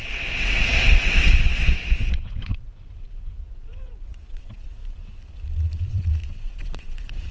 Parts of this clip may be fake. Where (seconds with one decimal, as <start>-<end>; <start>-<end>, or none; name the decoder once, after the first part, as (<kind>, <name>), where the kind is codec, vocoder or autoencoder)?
0.0-4.8 (vocoder, WaveNeXt); 5.9-7.3